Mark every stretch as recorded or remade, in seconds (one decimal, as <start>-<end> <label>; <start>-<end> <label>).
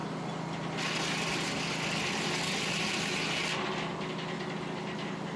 0.0-5.4 recorded